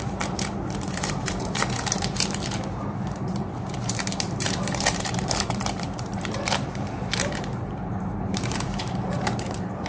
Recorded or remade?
remade